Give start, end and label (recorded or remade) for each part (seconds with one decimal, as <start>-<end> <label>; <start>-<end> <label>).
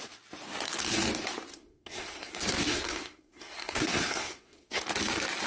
0.0-1.5 recorded; 1.5-4.8 remade; 4.8-5.5 recorded